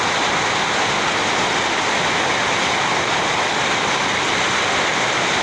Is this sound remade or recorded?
recorded